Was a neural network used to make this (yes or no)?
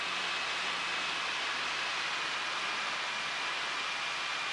no